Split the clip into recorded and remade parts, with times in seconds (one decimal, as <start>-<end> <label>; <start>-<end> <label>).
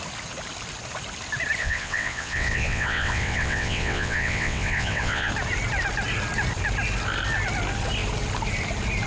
0.0-1.6 recorded; 1.6-5.3 remade; 5.3-9.1 recorded